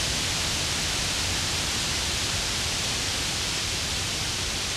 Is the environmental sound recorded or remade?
recorded